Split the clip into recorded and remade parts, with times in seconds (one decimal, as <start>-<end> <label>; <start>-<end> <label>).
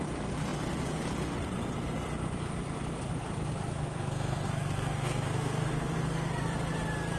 0.0-3.7 recorded; 3.7-6.3 remade; 6.3-7.2 recorded